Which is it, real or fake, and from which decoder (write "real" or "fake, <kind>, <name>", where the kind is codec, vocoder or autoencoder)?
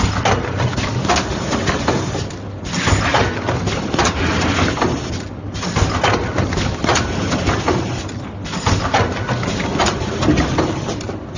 real